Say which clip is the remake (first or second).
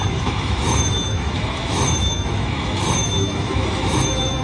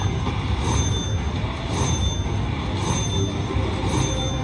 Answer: first